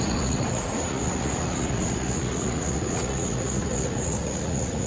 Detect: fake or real fake